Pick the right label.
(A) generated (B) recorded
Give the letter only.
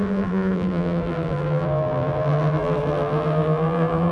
A